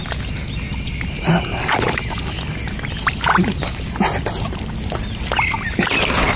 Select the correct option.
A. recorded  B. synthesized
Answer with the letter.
A